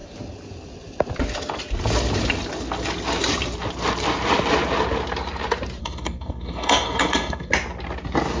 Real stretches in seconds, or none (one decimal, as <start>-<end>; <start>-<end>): 0.0-5.8; 7.5-8.4